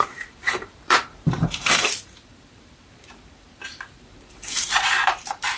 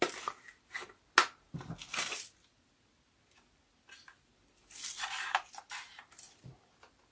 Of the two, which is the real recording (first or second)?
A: second